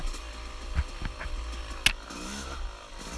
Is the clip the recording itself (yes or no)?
yes